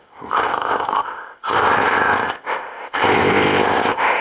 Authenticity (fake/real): fake